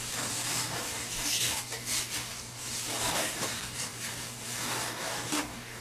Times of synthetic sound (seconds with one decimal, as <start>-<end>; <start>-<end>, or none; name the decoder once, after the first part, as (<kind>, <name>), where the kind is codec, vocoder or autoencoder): 0.0-5.8 (codec, DAC)